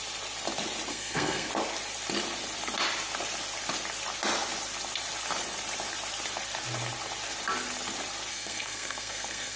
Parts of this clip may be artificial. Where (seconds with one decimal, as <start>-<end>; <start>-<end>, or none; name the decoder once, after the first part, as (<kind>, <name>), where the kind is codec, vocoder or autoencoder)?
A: 0.9-1.5 (codec, SNAC); 8.3-9.6